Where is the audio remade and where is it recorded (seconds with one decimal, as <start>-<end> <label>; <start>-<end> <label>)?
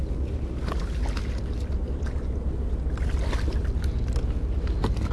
0.0-5.1 recorded